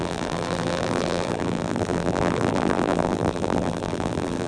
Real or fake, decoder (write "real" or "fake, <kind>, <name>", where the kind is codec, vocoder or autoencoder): fake, vocoder, BigVGAN v2